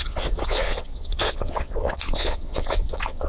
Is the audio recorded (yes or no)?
no